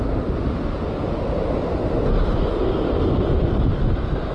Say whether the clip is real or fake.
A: real